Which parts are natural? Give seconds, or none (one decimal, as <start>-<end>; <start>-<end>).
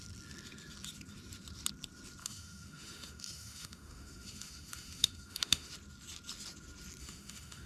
0.0-2.2; 5.7-7.0